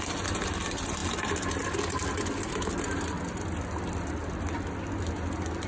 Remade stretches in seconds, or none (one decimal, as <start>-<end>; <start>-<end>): none